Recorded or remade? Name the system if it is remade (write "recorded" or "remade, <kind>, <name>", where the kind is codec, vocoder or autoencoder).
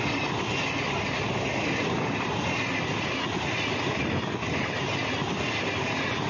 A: recorded